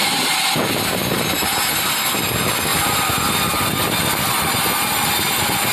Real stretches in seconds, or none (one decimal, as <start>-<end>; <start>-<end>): 0.0-2.7; 4.4-5.7